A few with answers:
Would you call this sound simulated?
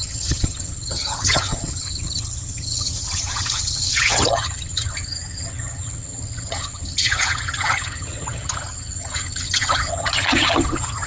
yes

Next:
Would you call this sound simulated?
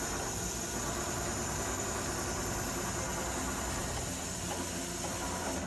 no